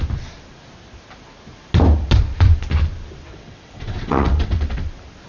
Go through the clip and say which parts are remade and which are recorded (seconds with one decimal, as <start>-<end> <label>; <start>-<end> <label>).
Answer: 0.0-3.3 recorded; 3.3-4.8 remade; 4.8-5.3 recorded